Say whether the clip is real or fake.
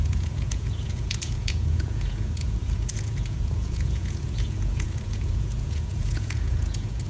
fake